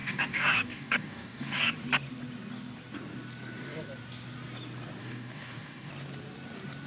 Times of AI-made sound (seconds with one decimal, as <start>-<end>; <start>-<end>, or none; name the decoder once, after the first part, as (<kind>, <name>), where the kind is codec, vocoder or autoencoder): 0.0-1.7 (codec, DAC); 5.0-5.9